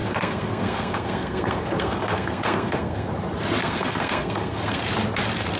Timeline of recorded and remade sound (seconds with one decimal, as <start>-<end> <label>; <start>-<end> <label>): 0.0-3.1 remade; 3.1-3.6 recorded; 3.6-4.8 remade; 4.8-5.6 recorded